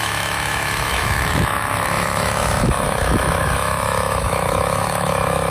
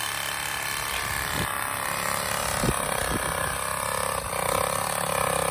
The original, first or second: second